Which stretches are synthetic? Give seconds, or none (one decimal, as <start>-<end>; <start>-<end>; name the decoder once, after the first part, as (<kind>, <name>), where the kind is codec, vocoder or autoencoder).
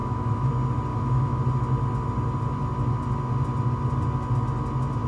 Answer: 0.0-0.5 (autoencoder, DAC-VAE); 0.9-1.4